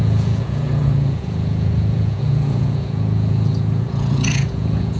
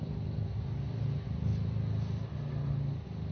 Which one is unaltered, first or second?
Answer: second